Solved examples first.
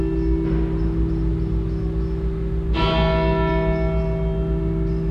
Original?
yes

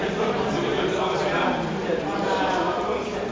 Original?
yes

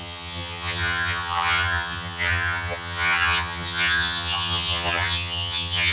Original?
no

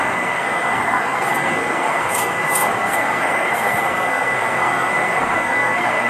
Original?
no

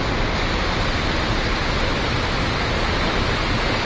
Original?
yes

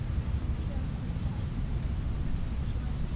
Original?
yes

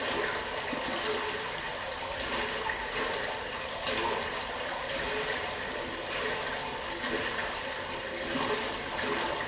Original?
yes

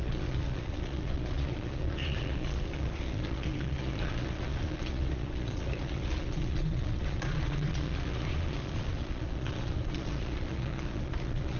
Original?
no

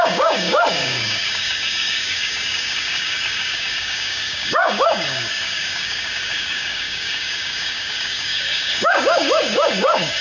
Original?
no